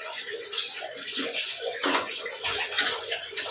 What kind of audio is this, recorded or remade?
remade